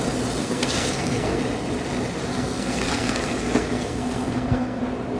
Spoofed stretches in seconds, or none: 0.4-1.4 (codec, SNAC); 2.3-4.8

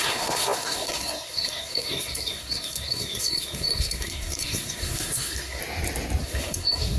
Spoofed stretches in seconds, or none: 0.0-5.6 (codec, SNAC); 6.2-7.0